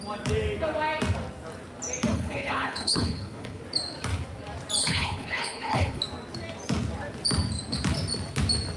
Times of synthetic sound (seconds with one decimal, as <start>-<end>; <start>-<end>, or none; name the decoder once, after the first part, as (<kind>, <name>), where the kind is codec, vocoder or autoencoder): 2.1-3.6 (codec, HILCodec); 4.8-6.0